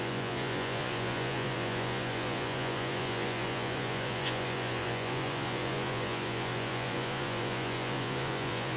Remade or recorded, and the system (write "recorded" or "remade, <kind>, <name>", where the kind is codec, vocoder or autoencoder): remade, vocoder, Vocos